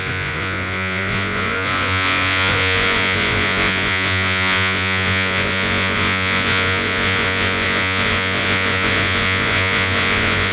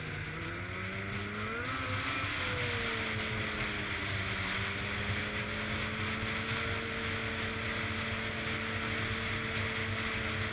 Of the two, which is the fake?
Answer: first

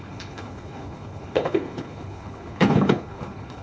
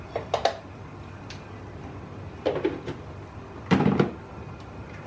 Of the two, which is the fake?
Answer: first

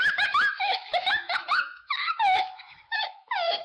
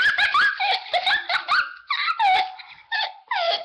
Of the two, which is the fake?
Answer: first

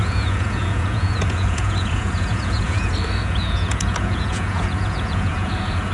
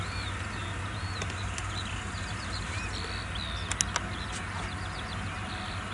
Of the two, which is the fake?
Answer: first